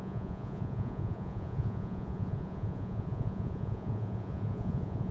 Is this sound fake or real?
fake